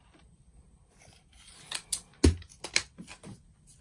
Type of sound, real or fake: real